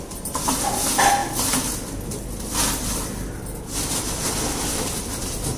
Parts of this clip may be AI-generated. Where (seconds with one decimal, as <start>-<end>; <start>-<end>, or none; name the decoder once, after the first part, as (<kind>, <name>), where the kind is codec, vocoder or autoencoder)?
none